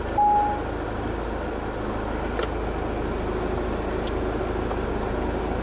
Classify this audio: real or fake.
real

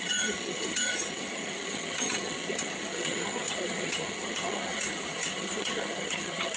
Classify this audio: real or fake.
fake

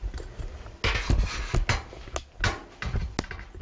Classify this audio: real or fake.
real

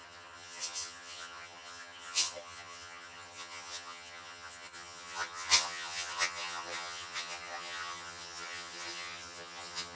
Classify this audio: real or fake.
fake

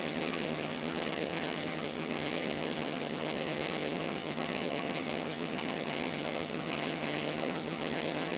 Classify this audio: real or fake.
fake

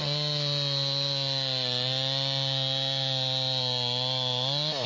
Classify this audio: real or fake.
real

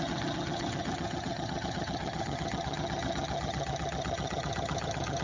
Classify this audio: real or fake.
fake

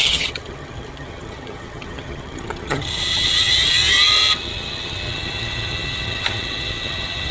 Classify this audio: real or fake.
fake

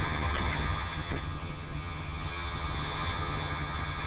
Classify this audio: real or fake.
fake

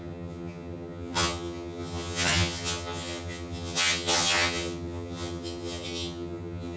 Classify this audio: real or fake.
fake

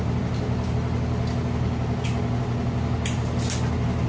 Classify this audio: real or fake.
real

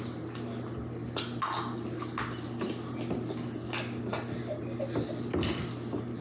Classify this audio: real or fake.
real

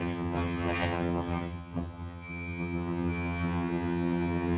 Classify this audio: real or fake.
fake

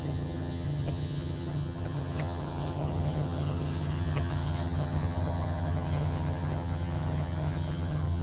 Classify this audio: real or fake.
fake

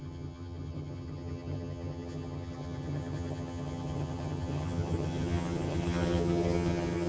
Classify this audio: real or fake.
fake